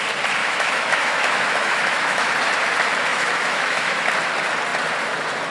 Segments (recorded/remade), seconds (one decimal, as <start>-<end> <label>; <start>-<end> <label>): 0.0-0.4 recorded; 0.4-2.3 remade; 2.3-3.1 recorded; 3.1-4.1 remade; 4.1-5.5 recorded